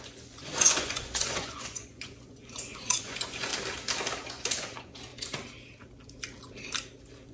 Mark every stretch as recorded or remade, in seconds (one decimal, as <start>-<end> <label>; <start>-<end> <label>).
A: 0.0-3.5 remade; 3.5-4.3 recorded; 4.3-5.1 remade; 5.1-7.3 recorded